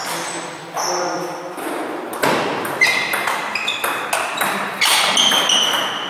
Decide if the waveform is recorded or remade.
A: recorded